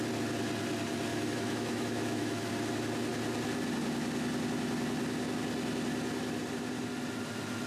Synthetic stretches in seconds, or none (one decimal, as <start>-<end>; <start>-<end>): 1.1-2.5